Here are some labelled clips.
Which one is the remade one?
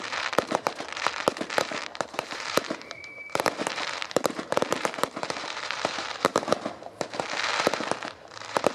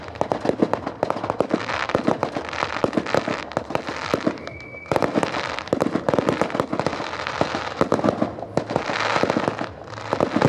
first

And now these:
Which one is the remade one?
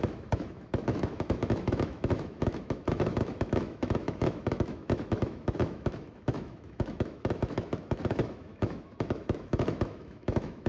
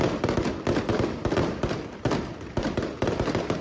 first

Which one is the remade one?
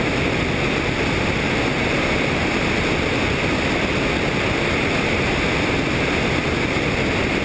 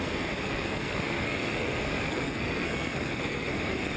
second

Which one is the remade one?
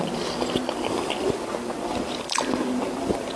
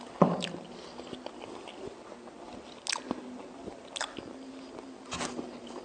first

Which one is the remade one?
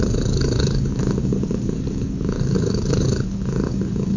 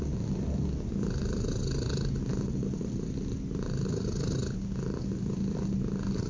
first